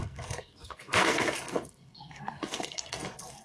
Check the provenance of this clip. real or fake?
fake